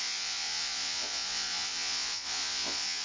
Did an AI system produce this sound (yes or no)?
yes